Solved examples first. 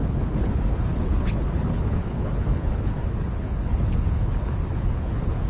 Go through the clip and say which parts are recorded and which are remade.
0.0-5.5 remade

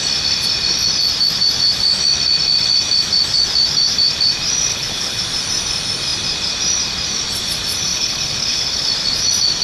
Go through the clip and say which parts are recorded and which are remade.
0.0-4.7 recorded; 4.7-5.2 remade; 5.2-7.9 recorded; 7.9-8.9 remade; 8.9-9.6 recorded

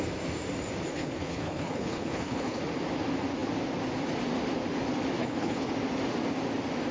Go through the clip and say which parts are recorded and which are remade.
0.0-0.9 recorded; 0.9-2.6 remade; 2.6-5.2 recorded; 5.2-5.7 remade; 5.7-6.9 recorded

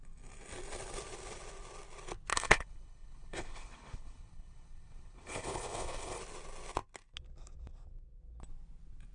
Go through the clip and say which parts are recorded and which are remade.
0.0-2.3 recorded; 2.3-6.2 remade; 6.2-9.1 recorded

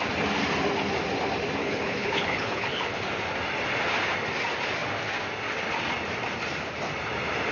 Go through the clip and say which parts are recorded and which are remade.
0.0-1.6 recorded; 1.6-2.9 remade; 2.9-7.5 recorded

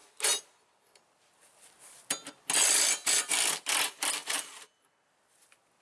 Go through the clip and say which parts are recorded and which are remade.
0.0-5.8 recorded

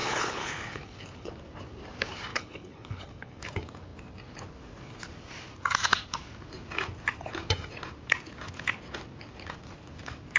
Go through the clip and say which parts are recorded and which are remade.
0.0-1.3 remade; 1.3-2.3 recorded; 2.3-3.4 remade; 3.4-10.4 recorded

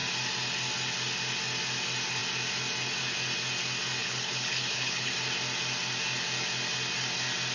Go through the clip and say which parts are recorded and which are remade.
0.0-4.0 recorded; 4.0-5.1 remade; 5.1-7.5 recorded